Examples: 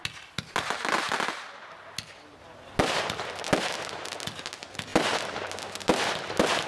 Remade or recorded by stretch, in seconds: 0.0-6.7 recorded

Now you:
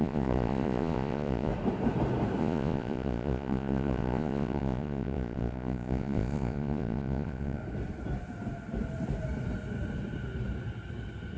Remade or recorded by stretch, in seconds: 0.0-1.5 remade; 1.5-2.4 recorded; 2.4-7.6 remade; 7.6-11.4 recorded

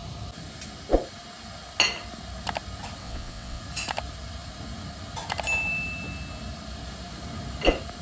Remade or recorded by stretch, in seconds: 0.0-3.0 recorded; 3.0-3.6 remade; 3.6-8.0 recorded

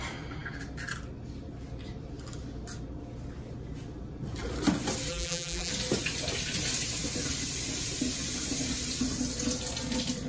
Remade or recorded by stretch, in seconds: 0.0-5.1 recorded; 5.1-5.7 remade; 5.7-10.3 recorded

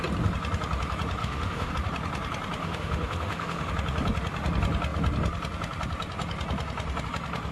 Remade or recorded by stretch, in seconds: 0.0-1.2 recorded; 1.2-1.7 remade; 1.7-2.6 recorded; 2.6-3.7 remade; 3.7-7.5 recorded

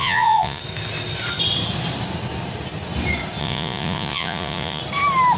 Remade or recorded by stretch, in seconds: 0.0-0.6 remade; 0.6-3.4 recorded; 3.4-4.8 remade; 4.8-5.4 recorded

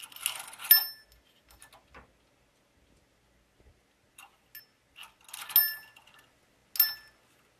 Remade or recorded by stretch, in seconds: 0.0-7.6 recorded